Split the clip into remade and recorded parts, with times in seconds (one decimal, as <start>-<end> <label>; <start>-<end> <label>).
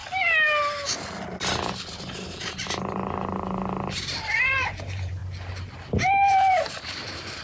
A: 0.0-4.4 recorded; 4.4-5.2 remade; 5.2-6.2 recorded; 6.2-7.4 remade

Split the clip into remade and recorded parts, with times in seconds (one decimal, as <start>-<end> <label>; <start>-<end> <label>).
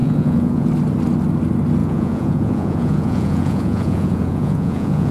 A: 0.0-0.7 remade; 0.7-1.8 recorded; 1.8-5.1 remade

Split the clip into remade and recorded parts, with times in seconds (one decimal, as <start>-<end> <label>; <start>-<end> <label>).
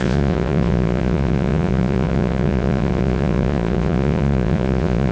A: 0.0-5.1 remade